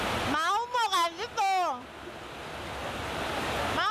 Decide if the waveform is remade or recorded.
recorded